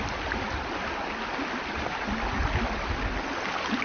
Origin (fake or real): real